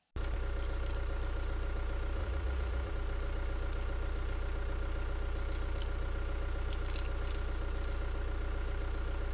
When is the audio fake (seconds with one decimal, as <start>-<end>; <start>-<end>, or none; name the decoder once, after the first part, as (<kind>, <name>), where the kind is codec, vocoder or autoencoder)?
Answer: 2.2-2.9 (vocoder, Vocos)